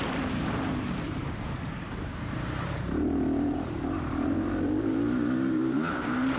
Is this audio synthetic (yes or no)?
yes